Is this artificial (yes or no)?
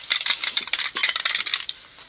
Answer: no